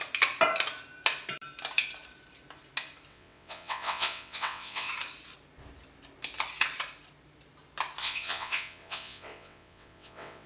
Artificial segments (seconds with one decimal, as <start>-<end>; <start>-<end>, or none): 3.1-4.9; 8.0-10.5